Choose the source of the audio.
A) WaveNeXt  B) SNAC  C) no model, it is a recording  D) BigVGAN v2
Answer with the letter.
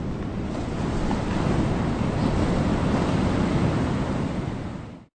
C